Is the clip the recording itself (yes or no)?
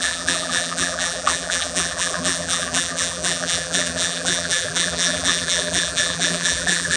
no